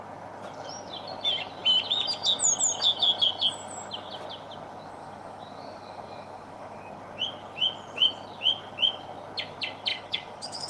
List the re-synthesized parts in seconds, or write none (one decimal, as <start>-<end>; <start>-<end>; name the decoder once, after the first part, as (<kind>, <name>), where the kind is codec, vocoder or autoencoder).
5.0-6.9 (autoencoder, DAC-VAE); 9.9-10.7